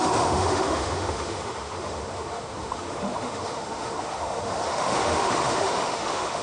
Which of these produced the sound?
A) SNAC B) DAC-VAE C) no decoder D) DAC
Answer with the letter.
B